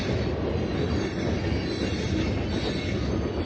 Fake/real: real